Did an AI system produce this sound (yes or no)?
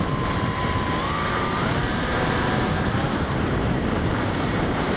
yes